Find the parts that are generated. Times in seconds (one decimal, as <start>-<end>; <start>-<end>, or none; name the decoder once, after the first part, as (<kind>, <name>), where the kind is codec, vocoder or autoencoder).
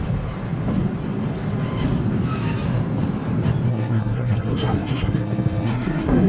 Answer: 3.7-6.3 (codec, SNAC)